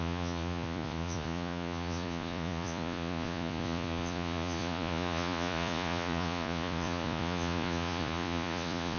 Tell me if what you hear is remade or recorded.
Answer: remade